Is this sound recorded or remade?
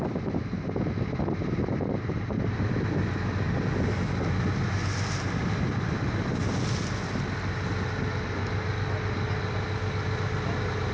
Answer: recorded